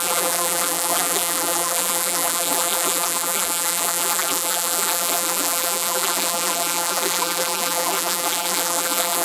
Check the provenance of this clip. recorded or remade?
remade